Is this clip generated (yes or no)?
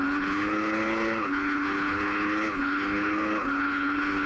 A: yes